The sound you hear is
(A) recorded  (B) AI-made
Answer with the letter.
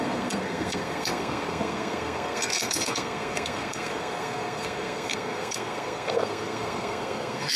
B